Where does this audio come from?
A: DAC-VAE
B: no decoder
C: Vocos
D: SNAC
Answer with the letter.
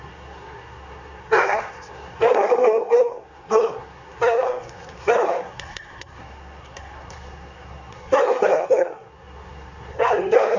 D